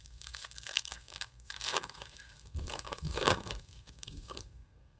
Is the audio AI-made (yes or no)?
yes